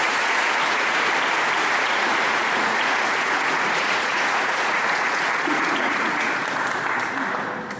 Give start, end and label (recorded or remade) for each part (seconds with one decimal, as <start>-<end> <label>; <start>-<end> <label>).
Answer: 0.0-1.1 remade; 1.1-1.6 recorded; 1.6-6.3 remade; 6.3-7.8 recorded